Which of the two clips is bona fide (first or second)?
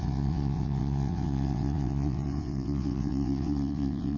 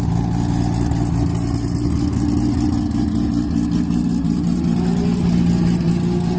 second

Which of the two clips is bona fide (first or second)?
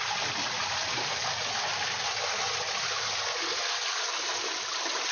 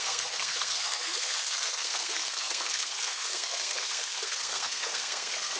first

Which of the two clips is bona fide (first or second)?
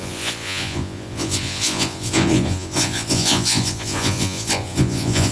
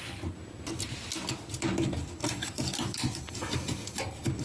second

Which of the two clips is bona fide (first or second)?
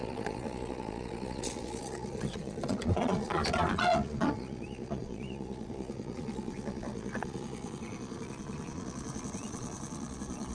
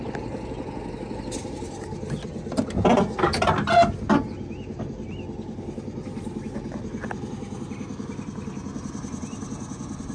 second